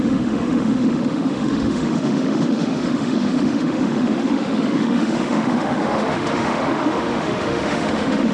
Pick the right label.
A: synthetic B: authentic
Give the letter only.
A